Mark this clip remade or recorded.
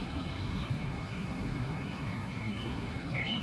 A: remade